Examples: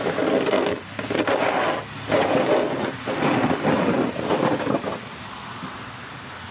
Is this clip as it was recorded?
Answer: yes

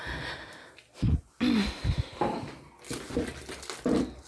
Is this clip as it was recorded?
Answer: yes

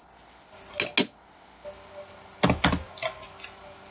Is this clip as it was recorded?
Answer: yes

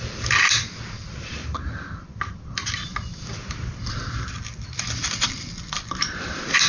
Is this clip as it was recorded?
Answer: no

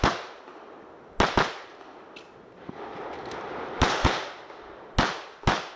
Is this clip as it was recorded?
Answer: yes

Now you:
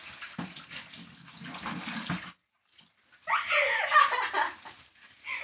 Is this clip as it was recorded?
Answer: yes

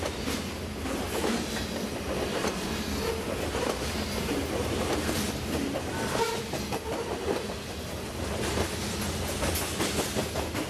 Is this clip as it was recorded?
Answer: yes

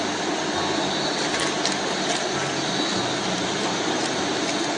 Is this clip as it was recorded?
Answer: yes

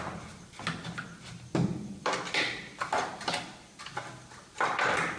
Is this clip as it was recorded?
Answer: yes